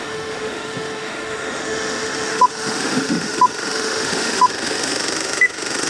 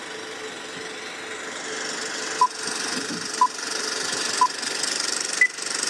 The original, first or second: second